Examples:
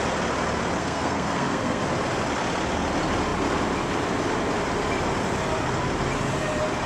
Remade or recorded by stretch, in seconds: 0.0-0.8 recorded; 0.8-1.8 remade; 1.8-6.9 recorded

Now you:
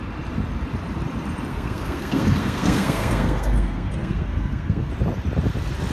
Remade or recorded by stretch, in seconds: 0.0-1.5 recorded; 1.5-4.9 remade; 4.9-5.9 recorded

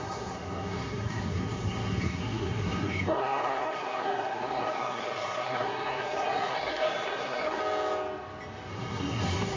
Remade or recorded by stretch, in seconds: 0.0-7.6 remade; 7.6-8.7 recorded; 8.7-9.6 remade